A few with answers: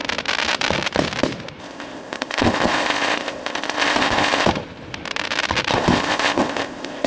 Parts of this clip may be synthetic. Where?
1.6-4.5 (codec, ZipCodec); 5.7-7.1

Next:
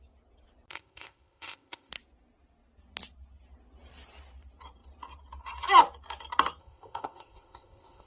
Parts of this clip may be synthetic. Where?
0.7-1.9 (codec, ZipCodec); 6.6-8.1

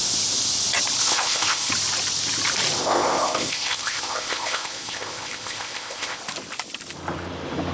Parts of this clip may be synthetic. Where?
1.0-1.7 (codec, ZipCodec); 2.8-6.2

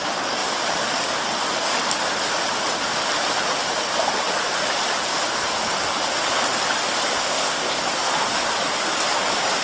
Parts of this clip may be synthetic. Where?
7.2-7.8 (codec, ZipCodec)

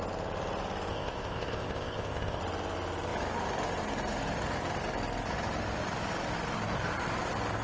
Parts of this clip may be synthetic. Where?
0.9-2.4 (codec, ZipCodec)

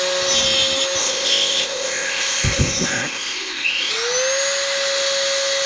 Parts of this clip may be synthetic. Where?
1.0-3.9 (codec, ZipCodec)